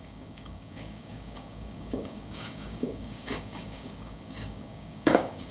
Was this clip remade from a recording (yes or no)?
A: yes